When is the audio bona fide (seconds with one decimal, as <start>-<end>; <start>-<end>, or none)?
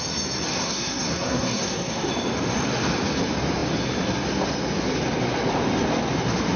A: 0.0-0.5; 2.1-6.6